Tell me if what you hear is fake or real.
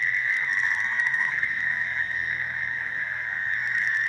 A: fake